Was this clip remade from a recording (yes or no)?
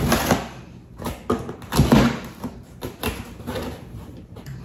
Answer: no